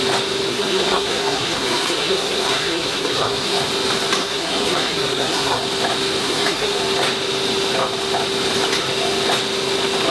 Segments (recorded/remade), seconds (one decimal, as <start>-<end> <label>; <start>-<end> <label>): 0.0-0.5 recorded; 0.5-3.6 remade; 3.6-4.2 recorded; 4.2-5.6 remade; 5.6-6.2 recorded; 6.2-6.8 remade; 6.8-10.1 recorded